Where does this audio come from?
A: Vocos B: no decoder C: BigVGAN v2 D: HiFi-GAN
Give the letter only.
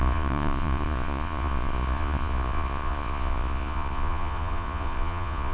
A